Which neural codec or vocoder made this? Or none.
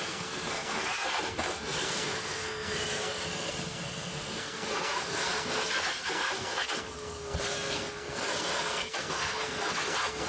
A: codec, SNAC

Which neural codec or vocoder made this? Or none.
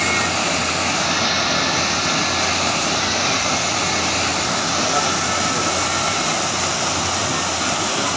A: none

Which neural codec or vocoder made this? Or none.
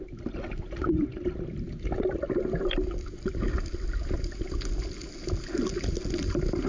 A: none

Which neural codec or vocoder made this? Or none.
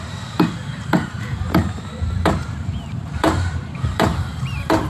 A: vocoder, BigVGAN v2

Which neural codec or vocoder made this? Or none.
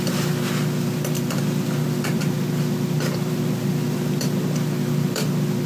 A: vocoder, BigVGAN v2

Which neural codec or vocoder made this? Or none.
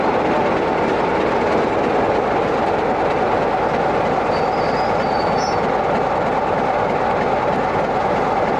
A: none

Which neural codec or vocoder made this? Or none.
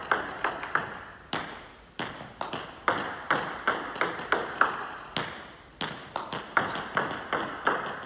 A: none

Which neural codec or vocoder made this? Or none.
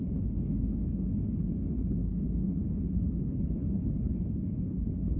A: codec, HILCodec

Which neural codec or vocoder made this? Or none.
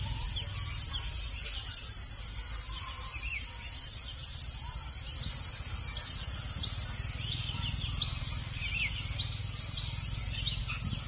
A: none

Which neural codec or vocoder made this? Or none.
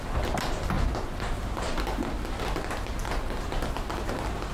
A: none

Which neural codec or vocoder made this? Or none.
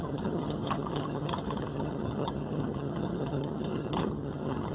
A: vocoder, HiFi-GAN